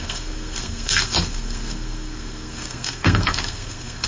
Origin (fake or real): fake